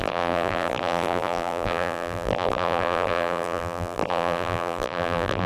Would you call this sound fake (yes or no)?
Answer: yes